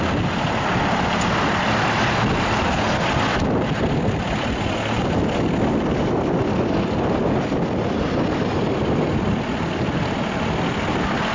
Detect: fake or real real